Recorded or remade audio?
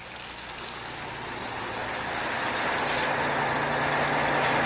recorded